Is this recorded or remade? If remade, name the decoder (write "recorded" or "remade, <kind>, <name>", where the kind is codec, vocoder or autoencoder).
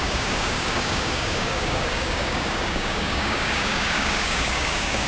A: remade, codec, DAC